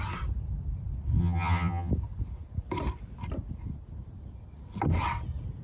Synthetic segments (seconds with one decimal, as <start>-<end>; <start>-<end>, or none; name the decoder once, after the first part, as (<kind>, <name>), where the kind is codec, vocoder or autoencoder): 1.2-1.9 (vocoder, HiFi-GAN)